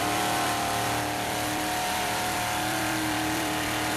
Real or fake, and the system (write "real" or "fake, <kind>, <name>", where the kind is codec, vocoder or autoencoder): fake, vocoder, BigVGAN v2